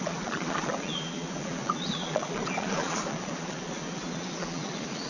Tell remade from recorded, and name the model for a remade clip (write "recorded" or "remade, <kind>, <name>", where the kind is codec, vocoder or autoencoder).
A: remade, vocoder, Vocos